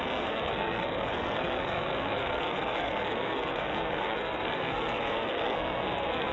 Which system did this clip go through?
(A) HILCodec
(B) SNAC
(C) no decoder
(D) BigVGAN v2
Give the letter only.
B